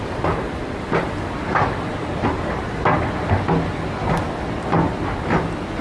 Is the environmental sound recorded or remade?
recorded